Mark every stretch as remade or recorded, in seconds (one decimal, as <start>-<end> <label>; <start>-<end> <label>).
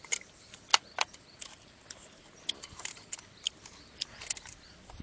0.0-5.0 recorded